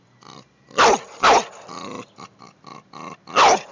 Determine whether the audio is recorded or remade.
recorded